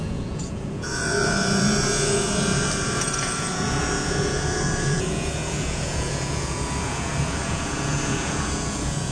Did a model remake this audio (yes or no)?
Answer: yes